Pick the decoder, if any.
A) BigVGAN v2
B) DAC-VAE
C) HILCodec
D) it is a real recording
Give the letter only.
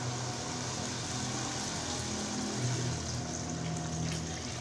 D